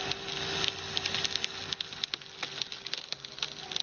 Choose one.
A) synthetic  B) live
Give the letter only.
B